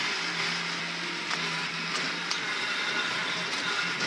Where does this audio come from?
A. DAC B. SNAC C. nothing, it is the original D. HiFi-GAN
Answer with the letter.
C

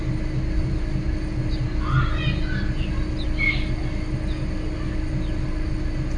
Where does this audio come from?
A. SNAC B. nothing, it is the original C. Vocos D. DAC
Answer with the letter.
B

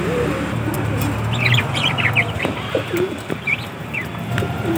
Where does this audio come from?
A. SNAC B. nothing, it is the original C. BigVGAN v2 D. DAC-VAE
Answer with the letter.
B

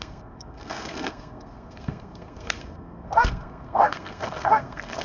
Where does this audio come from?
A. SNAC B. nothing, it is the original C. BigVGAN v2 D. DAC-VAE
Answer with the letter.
A